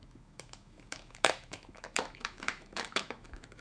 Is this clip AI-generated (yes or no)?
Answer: yes